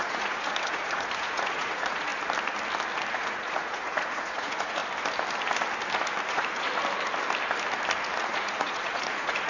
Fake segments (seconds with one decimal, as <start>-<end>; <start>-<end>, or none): 0.0-2.1; 3.1-4.8; 6.3-6.7; 8.2-9.5